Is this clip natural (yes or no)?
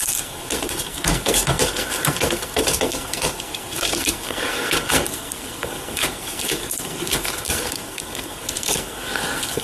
no